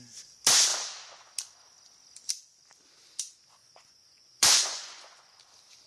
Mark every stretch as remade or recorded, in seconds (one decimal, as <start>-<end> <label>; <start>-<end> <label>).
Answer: 0.0-3.6 recorded; 3.6-5.4 remade; 5.4-5.9 recorded

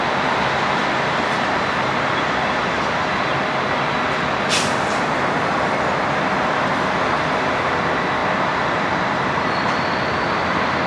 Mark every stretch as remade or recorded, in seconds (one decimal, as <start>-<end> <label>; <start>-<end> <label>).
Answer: 0.0-8.2 recorded; 8.2-9.7 remade; 9.7-10.9 recorded